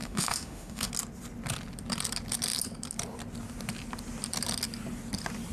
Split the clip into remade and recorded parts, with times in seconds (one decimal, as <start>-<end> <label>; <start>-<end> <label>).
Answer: 0.0-0.9 remade; 0.9-5.5 recorded